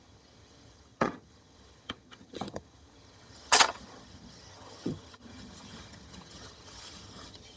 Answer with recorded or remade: remade